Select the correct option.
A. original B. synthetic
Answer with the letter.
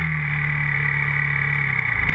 A